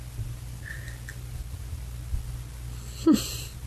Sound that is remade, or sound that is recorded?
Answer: recorded